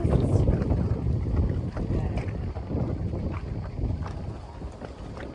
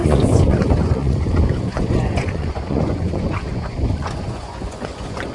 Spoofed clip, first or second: second